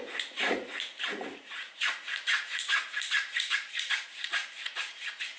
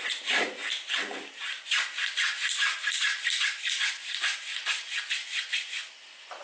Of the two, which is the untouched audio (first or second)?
second